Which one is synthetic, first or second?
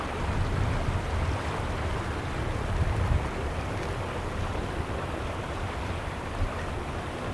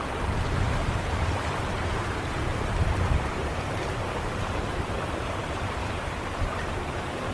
second